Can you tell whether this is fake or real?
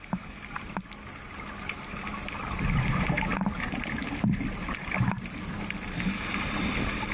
real